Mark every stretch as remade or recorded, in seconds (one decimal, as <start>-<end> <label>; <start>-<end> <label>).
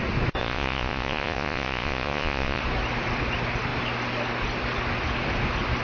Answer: 0.0-0.4 recorded; 0.4-2.6 remade; 2.6-5.8 recorded